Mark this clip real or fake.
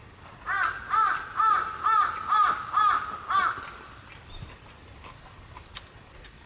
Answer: real